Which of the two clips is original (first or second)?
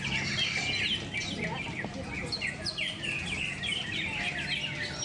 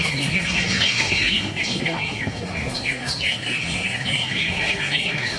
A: first